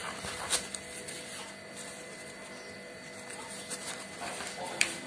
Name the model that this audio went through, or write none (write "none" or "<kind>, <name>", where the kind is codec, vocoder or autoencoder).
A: vocoder, BigVGAN v2